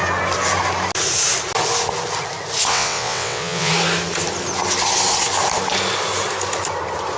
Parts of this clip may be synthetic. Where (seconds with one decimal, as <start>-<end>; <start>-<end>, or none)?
2.7-3.7